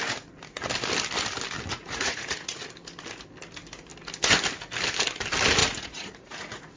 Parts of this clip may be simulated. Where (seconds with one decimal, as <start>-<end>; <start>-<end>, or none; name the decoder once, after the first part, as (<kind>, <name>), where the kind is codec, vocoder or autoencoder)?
1.7-2.6 (vocoder, Vocos); 5.6-6.8